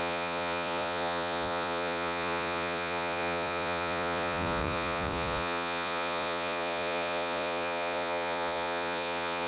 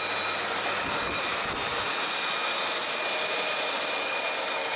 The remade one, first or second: first